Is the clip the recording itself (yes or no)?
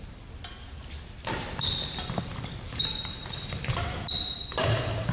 yes